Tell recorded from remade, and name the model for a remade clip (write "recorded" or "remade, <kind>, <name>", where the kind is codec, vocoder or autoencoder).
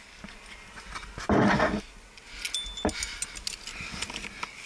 recorded